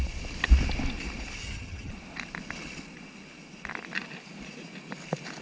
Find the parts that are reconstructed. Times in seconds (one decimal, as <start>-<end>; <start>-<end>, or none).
1.4-1.9